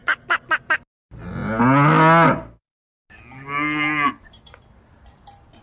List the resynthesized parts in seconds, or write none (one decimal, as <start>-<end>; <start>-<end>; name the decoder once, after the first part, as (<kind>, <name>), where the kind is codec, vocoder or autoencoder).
none